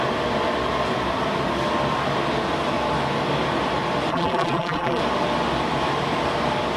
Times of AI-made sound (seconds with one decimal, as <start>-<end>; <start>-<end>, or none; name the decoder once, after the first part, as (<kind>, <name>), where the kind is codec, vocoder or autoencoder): 4.1-5.0 (vocoder, BigVGAN v2)